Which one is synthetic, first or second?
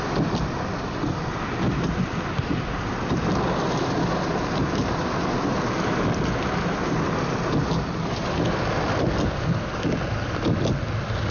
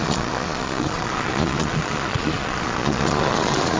second